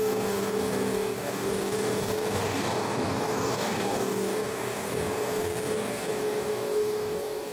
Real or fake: fake